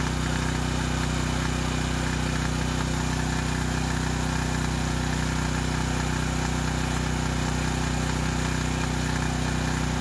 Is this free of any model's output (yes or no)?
yes